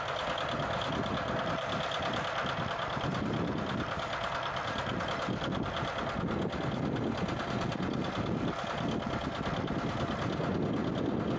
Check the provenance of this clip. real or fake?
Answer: real